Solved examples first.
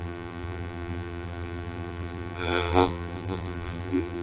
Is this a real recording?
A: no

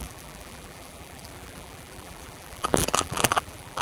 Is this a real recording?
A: no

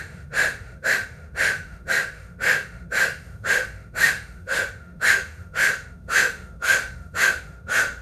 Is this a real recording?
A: no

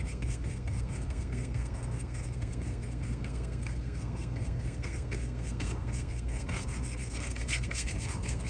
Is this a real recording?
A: no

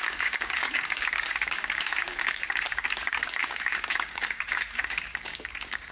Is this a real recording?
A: no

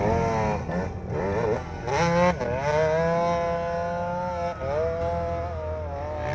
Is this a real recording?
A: yes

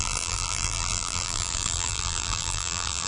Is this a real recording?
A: no